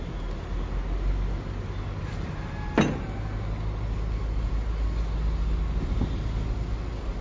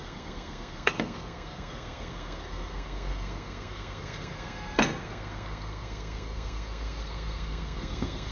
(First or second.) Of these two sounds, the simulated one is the second